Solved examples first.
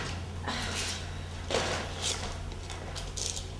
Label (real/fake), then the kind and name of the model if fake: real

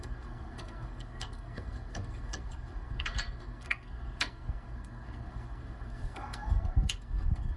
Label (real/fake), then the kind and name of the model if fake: fake, codec, SNAC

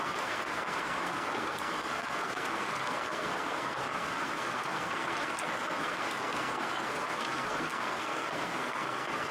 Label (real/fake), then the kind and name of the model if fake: fake, codec, SNAC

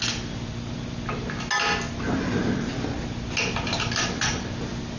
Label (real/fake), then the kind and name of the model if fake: real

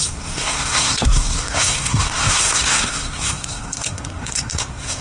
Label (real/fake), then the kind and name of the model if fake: fake, codec, SNAC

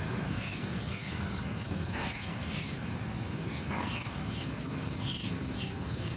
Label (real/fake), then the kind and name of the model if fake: fake, codec, SNAC